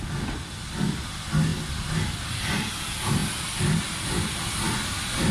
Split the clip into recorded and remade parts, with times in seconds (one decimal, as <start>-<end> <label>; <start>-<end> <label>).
0.0-5.3 recorded